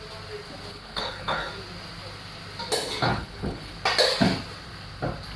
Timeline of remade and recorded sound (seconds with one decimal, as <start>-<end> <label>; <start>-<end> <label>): 0.0-0.7 recorded; 0.7-1.5 remade; 1.5-3.0 recorded; 3.0-3.7 remade; 3.7-5.4 recorded